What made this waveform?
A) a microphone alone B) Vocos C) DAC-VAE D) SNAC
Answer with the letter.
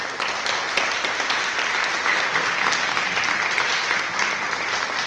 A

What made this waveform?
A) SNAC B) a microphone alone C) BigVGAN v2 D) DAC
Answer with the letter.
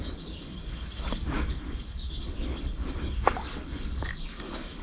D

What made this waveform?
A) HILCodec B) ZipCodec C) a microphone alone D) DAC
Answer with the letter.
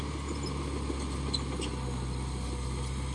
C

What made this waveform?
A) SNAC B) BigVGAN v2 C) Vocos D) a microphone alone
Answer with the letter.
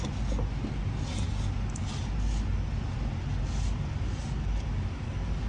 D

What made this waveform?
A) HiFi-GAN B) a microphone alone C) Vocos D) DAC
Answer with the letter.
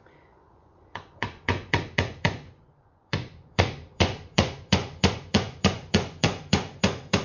C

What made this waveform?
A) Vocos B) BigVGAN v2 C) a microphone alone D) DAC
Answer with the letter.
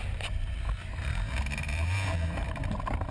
B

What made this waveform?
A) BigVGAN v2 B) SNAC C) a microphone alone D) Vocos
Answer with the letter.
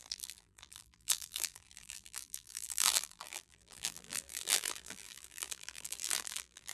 A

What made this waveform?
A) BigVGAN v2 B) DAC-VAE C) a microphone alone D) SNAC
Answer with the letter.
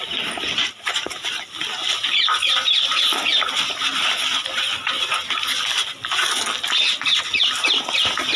C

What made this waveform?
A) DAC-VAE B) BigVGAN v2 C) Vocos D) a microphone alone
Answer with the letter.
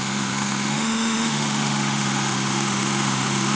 A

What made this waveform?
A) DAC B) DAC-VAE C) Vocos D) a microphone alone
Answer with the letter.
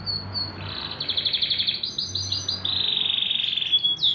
D